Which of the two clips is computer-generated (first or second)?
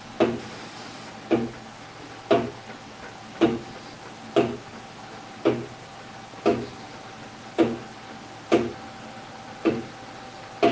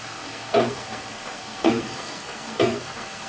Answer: second